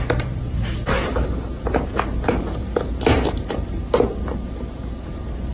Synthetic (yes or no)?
yes